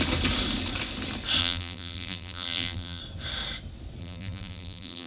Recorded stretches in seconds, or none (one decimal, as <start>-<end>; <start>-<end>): 0.0-1.4; 3.0-4.0